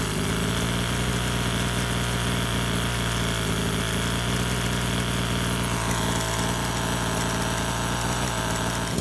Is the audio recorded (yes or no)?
yes